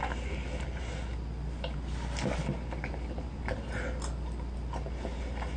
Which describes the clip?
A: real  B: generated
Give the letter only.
A